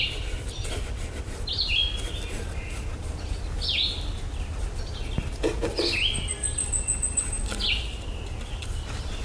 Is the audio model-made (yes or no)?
no